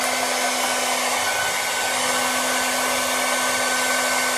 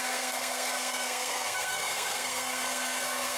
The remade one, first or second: second